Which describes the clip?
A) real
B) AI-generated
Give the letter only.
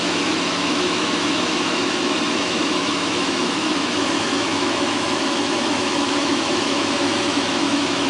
B